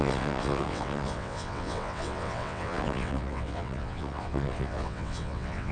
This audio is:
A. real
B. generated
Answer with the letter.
B